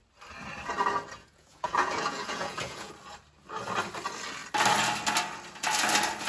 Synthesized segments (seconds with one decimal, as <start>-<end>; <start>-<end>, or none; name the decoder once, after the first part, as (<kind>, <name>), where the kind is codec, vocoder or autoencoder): 1.2-2.9 (vocoder, Vocos)